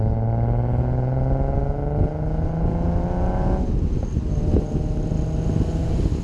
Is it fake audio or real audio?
real